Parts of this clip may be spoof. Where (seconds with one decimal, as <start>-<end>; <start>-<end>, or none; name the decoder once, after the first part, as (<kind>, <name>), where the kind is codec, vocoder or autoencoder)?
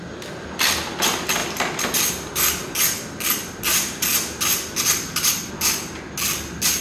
none